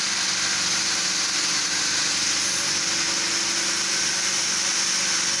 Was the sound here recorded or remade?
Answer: recorded